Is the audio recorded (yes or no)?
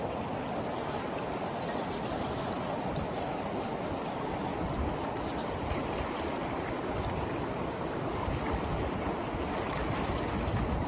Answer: yes